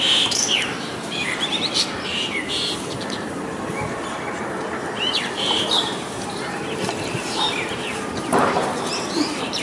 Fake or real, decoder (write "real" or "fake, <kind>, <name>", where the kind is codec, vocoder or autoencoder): fake, vocoder, BigVGAN v2